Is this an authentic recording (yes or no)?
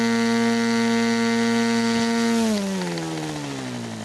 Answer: yes